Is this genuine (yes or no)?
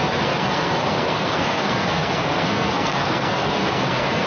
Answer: no